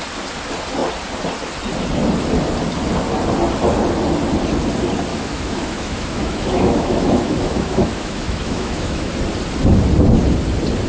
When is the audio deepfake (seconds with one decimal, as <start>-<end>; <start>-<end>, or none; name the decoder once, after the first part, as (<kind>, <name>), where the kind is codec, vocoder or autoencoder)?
5.1-9.1 (autoencoder, DAC-VAE)